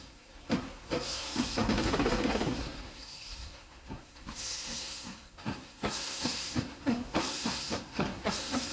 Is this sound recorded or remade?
remade